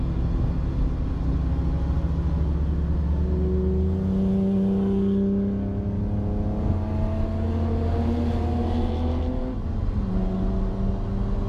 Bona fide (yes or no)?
yes